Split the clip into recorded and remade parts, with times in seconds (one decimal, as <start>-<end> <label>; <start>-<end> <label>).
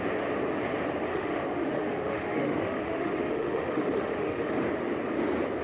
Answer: 0.0-1.1 recorded; 1.1-4.5 remade; 4.5-5.6 recorded